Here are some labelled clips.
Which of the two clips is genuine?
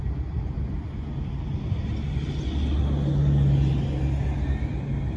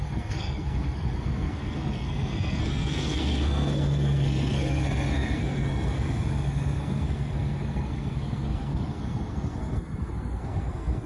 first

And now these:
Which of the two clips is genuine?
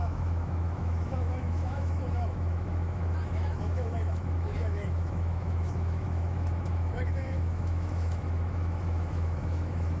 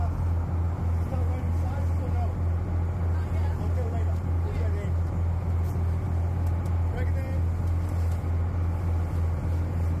second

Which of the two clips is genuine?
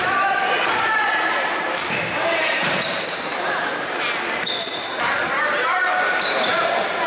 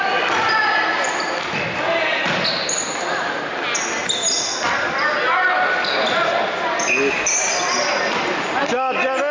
second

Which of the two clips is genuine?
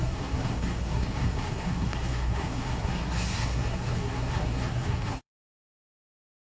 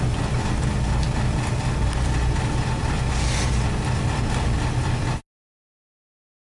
second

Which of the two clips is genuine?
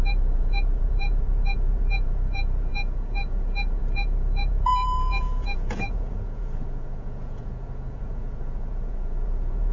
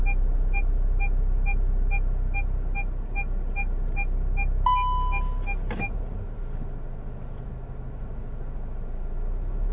second